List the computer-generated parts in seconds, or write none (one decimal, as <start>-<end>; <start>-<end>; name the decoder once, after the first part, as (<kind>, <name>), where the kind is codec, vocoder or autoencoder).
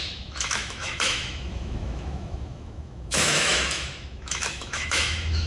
0.0-5.5 (autoencoder, DAC-VAE)